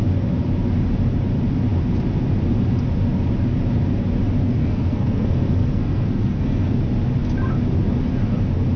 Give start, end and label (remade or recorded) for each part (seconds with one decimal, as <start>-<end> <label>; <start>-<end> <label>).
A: 0.0-4.4 recorded; 4.4-6.8 remade; 6.8-8.8 recorded